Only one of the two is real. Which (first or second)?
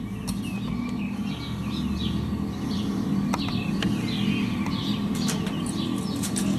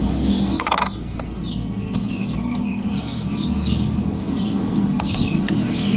first